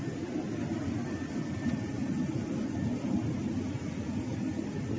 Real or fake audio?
real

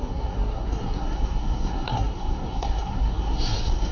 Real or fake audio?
fake